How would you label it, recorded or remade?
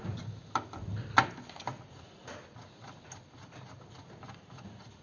recorded